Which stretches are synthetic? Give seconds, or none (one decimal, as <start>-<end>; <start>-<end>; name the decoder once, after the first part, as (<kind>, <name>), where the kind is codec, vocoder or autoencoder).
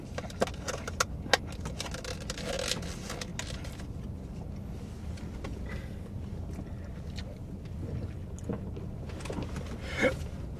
none